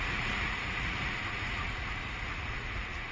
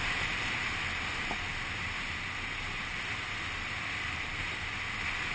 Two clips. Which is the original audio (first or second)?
second